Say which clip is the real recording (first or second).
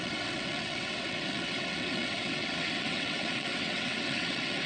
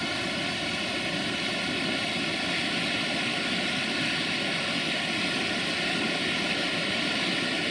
second